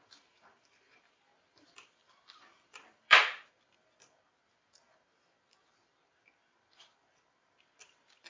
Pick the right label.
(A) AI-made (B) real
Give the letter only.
A